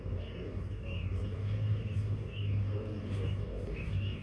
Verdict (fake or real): fake